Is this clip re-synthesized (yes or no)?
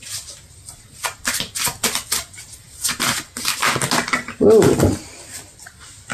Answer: no